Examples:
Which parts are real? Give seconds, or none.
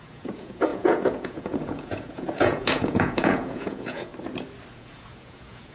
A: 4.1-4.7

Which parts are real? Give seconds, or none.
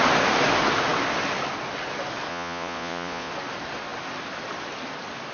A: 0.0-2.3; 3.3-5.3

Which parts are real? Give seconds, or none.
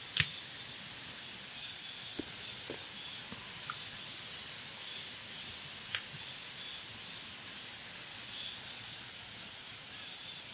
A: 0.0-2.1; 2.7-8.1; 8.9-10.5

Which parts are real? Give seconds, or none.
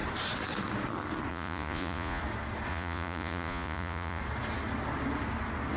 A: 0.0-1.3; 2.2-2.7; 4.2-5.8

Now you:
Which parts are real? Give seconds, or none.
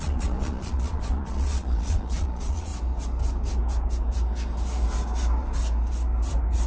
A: 2.7-6.7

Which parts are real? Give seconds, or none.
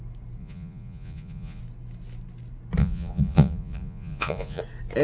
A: 0.0-0.4; 1.6-2.8; 4.6-5.0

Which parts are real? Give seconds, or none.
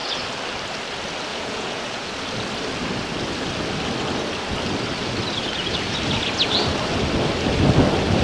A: 0.0-1.3; 2.1-8.2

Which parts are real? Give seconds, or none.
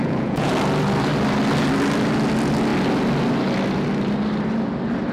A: 0.5-5.1